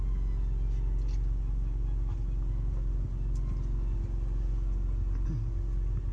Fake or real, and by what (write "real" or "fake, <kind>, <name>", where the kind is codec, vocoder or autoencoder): real